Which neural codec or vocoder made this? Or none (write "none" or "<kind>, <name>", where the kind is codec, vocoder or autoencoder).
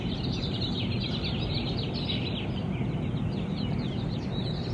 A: vocoder, BigVGAN v2